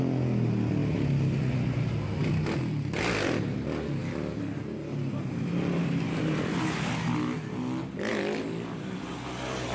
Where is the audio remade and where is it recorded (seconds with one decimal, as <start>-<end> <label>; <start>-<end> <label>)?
0.0-9.7 recorded